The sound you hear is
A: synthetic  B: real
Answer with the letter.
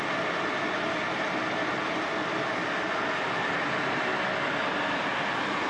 B